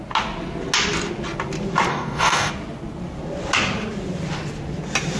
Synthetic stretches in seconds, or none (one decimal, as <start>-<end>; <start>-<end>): 1.9-2.5